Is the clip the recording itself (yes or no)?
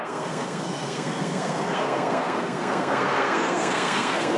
no